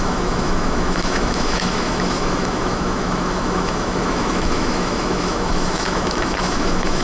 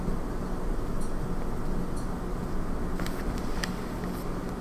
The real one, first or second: second